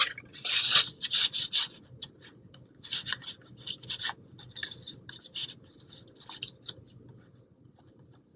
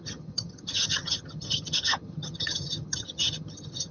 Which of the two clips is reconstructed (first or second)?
second